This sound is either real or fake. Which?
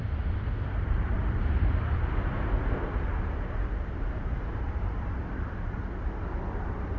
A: real